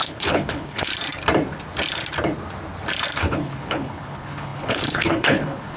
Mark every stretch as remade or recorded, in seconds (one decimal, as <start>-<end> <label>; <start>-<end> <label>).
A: 0.0-0.9 remade; 0.9-3.2 recorded; 3.2-5.8 remade